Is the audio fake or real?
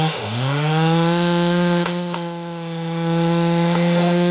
fake